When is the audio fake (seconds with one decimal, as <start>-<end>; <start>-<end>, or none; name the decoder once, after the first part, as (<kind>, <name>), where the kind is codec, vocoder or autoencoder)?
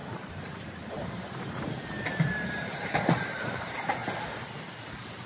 0.0-4.0 (vocoder, BigVGAN v2)